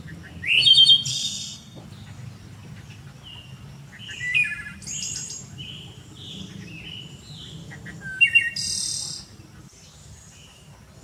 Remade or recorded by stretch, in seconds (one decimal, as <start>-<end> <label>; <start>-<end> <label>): 0.0-1.1 recorded; 1.1-1.8 remade; 1.8-11.0 recorded